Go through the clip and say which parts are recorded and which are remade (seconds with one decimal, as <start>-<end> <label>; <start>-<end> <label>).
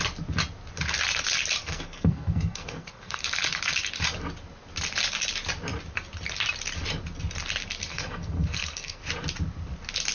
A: 0.0-1.6 recorded; 1.6-3.2 remade; 3.2-7.9 recorded; 7.9-9.0 remade; 9.0-10.1 recorded